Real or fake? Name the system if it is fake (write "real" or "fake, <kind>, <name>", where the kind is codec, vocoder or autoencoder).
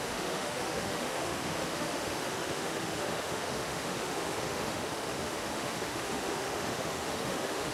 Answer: fake, autoencoder, DAC-VAE